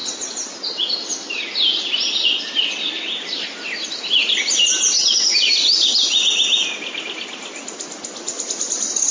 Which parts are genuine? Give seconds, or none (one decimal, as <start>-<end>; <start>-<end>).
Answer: 0.0-9.1